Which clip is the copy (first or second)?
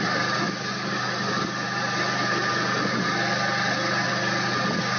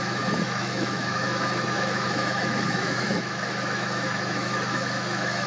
second